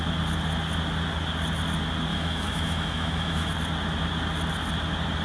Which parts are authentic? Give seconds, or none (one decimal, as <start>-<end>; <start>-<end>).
0.0-2.1; 3.5-5.2